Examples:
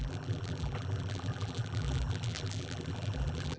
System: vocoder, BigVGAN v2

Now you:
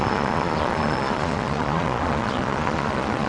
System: vocoder, Vocos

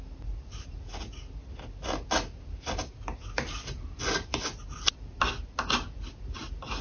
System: none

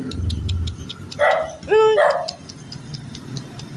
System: none